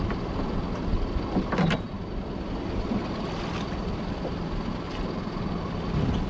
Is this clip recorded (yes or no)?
yes